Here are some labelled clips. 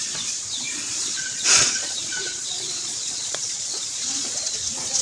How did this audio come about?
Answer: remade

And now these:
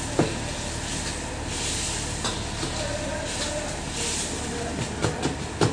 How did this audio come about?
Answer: recorded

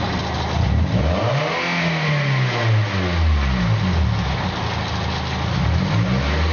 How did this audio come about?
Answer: recorded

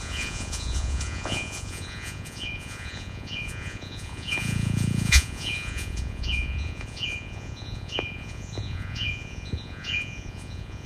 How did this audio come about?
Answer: remade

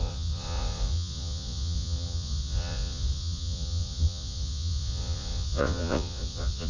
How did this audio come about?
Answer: remade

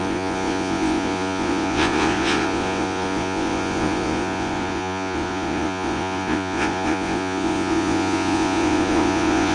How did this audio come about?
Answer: remade